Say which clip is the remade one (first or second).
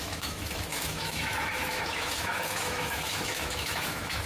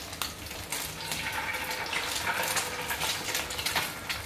first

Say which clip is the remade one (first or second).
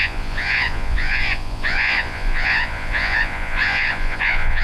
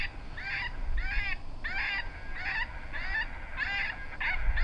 first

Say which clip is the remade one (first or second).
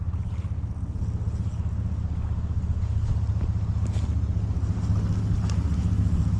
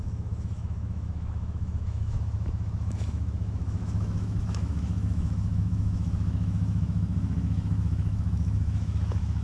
second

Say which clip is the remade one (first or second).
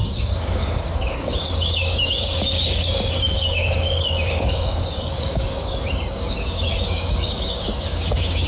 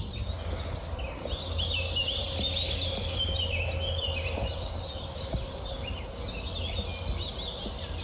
first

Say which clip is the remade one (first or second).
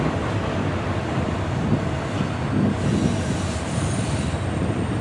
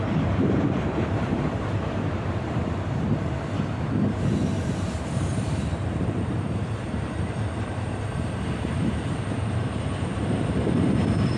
second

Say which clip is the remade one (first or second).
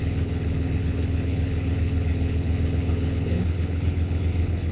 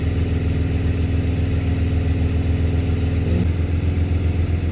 first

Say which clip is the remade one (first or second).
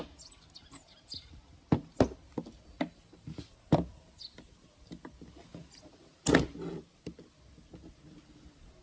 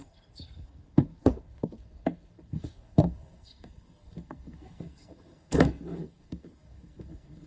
second